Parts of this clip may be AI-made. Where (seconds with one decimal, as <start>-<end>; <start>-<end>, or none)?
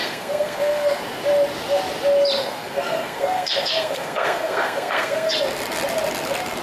0.0-1.0; 2.4-5.3